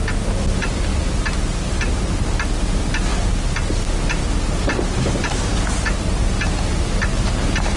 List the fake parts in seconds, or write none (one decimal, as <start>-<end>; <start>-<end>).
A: none